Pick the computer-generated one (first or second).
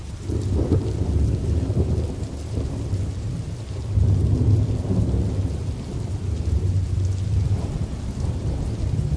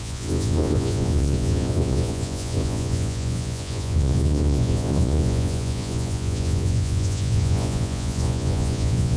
second